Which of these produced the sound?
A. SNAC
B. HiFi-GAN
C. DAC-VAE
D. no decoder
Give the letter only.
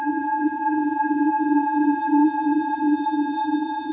B